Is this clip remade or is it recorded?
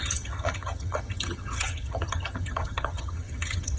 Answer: remade